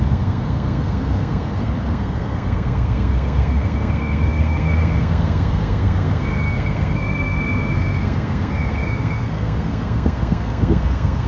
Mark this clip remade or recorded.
remade